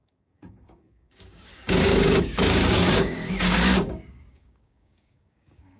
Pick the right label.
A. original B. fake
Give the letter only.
B